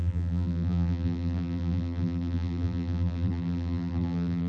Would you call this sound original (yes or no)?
no